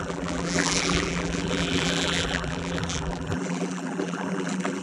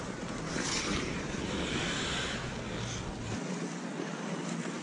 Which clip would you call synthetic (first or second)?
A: first